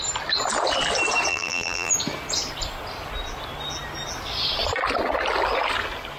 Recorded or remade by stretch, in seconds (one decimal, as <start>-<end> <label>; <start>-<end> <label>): 0.0-1.3 recorded; 1.3-1.9 remade; 1.9-6.2 recorded